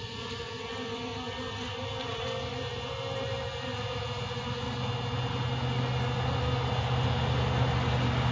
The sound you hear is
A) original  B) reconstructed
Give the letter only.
A